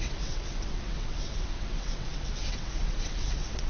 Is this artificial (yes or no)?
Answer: yes